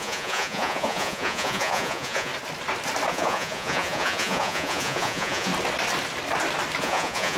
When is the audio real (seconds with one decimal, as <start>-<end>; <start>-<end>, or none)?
2.3-3.1; 5.5-6.8